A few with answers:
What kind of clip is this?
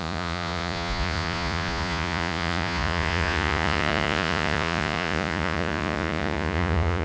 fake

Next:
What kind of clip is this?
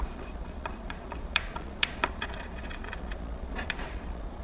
fake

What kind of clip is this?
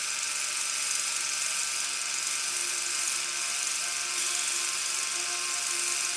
real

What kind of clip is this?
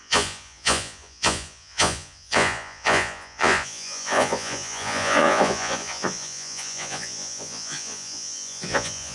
fake